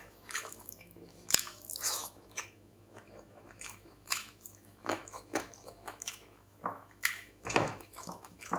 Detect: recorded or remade remade